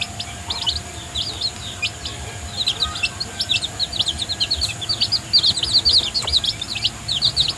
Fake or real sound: real